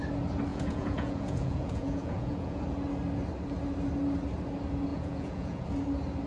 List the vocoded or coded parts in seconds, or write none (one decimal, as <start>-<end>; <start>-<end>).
0.5-2.6; 4.9-5.6